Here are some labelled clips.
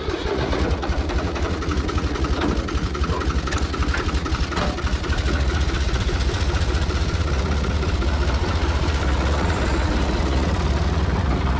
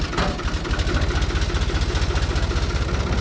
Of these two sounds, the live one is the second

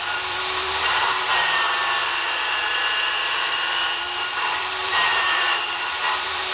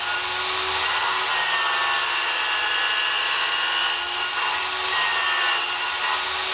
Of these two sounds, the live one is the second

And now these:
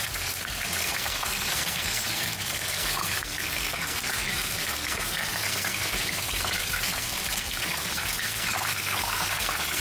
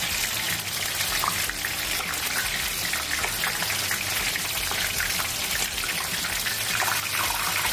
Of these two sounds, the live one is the second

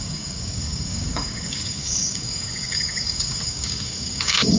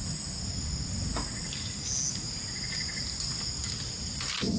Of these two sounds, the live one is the second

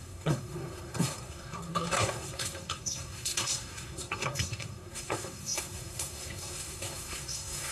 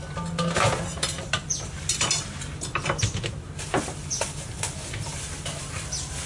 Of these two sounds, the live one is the second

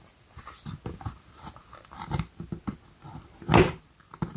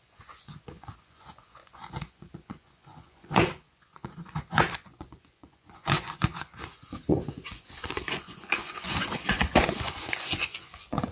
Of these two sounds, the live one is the first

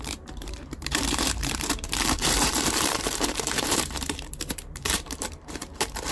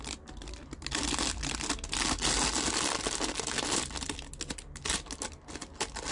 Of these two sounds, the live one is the second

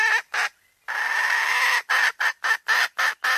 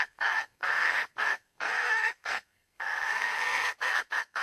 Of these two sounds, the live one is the first